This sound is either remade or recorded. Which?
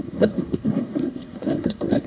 remade